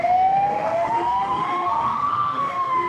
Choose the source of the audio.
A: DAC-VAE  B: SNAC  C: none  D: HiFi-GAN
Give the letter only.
A